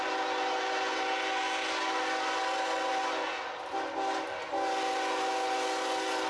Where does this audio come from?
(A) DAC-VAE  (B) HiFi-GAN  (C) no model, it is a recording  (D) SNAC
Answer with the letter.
C